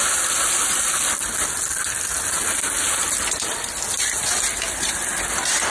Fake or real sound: real